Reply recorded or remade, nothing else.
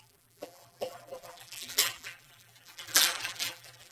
remade